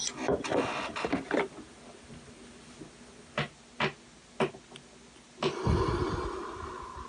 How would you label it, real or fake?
real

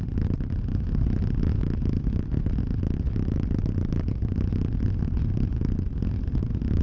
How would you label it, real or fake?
real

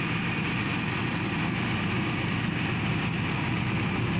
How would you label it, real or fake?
real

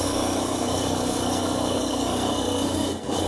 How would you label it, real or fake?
fake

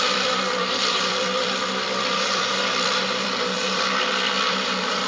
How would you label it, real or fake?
fake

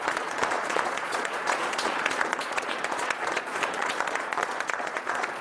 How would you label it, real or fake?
fake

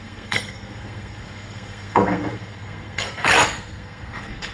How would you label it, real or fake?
fake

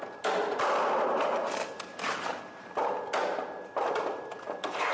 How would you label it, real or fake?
real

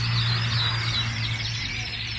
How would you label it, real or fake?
real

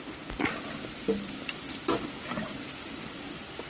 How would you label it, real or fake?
fake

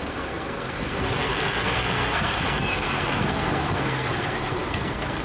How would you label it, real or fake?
fake